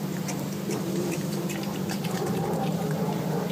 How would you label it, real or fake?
fake